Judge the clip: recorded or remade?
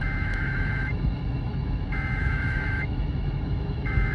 remade